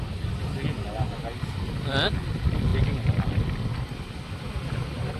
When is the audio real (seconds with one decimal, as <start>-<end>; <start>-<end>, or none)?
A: 0.0-5.2